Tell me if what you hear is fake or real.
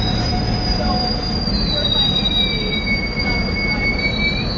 real